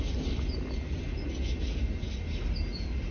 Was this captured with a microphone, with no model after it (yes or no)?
yes